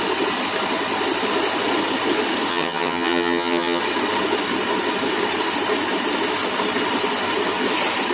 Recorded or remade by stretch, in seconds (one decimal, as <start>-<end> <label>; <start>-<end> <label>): 0.0-2.5 recorded; 2.5-3.8 remade; 3.8-8.1 recorded